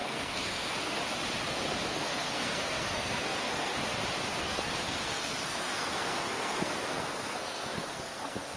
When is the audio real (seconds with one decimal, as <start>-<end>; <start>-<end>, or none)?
1.0-1.9; 3.7-4.4